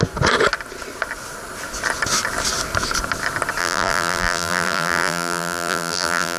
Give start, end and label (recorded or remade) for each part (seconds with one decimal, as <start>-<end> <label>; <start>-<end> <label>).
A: 0.0-3.6 recorded; 3.6-6.4 remade